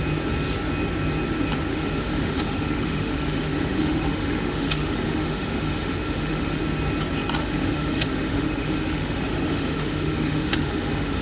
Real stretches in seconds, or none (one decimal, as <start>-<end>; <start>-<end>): 0.0-1.7; 6.6-7.4